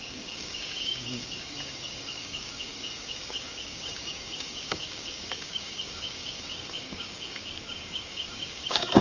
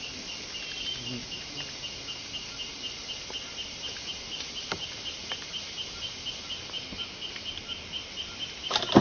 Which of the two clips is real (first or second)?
second